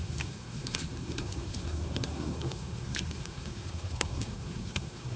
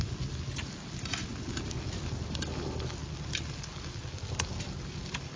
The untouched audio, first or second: second